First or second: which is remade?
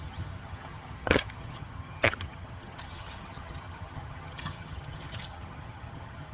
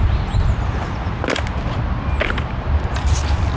first